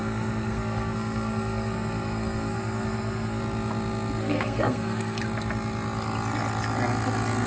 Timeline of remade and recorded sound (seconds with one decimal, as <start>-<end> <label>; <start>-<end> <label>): 0.0-3.4 remade; 3.4-4.2 recorded; 4.2-5.2 remade; 5.2-7.5 recorded